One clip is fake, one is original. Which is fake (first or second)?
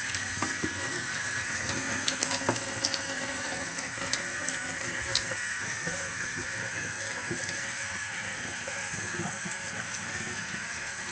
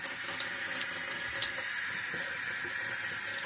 first